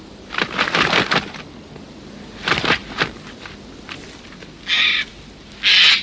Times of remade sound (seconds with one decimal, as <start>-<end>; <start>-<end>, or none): none